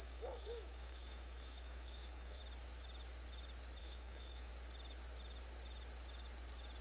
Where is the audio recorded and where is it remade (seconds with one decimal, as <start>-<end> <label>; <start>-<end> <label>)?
0.0-2.4 remade; 2.4-3.8 recorded; 3.8-4.5 remade; 4.5-6.8 recorded